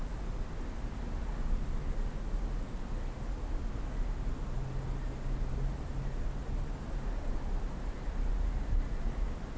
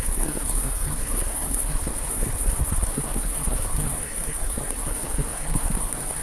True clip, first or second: first